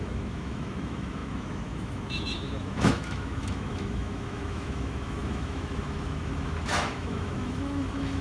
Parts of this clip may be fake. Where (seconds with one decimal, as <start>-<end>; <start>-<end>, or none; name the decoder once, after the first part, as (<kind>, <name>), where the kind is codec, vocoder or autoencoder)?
0.0-8.2 (autoencoder, DAC-VAE)